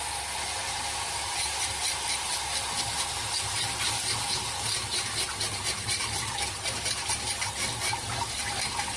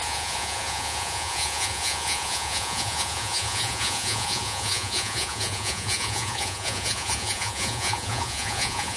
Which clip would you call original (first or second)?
first